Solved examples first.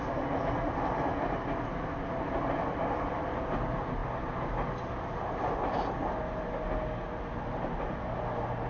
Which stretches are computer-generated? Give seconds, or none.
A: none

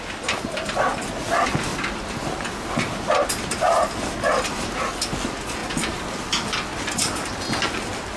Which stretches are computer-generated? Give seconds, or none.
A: none